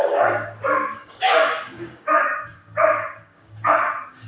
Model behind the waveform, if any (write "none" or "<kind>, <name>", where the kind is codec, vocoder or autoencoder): codec, DAC